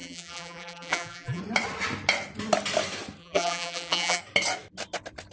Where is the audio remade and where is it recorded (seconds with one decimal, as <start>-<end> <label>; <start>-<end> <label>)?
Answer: 0.0-1.4 remade; 1.4-3.2 recorded; 3.2-4.2 remade; 4.2-5.3 recorded